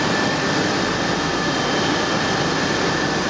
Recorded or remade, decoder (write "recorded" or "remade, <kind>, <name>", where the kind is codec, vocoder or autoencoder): recorded